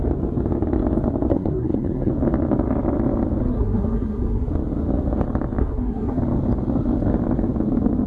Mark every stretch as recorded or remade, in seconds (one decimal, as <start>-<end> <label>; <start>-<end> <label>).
0.0-1.3 recorded; 1.3-2.1 remade; 2.1-3.4 recorded; 3.4-4.5 remade; 4.5-5.6 recorded; 5.6-6.2 remade; 6.2-8.1 recorded